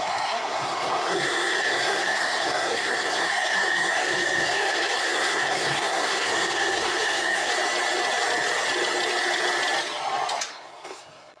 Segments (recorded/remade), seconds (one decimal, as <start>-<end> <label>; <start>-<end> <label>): 0.0-7.5 remade; 7.5-10.5 recorded; 10.5-11.4 remade